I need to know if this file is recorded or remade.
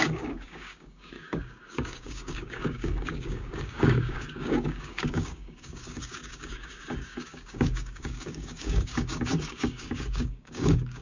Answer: remade